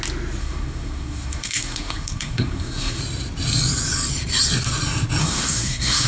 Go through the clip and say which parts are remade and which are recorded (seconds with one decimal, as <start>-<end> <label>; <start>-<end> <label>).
0.0-0.4 recorded; 0.4-3.0 remade; 3.0-5.2 recorded; 5.2-6.1 remade